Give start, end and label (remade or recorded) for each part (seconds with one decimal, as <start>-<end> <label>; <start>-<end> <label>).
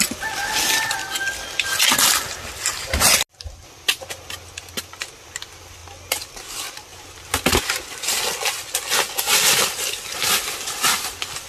0.0-11.5 recorded